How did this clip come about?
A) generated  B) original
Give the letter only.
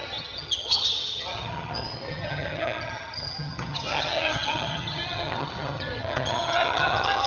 A